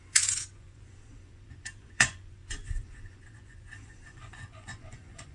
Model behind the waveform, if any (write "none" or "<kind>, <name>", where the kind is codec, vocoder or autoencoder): vocoder, Vocos